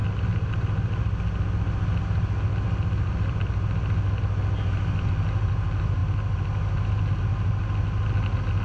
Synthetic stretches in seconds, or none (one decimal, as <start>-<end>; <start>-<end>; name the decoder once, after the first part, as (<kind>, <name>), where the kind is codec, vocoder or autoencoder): none